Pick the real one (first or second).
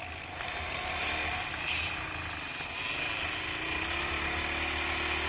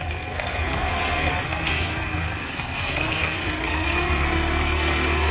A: first